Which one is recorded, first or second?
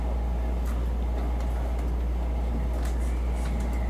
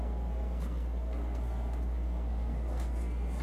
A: first